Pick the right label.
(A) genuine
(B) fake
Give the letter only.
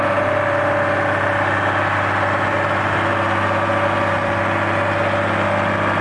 A